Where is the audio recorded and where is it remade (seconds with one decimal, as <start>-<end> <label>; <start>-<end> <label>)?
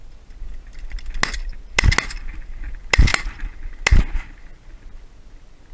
0.0-5.7 recorded